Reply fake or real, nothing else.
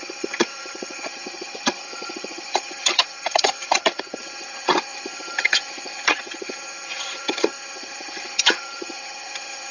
fake